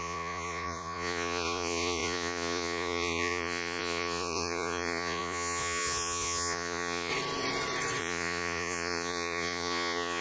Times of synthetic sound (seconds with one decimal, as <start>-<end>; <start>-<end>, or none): 0.0-7.1; 8.0-10.2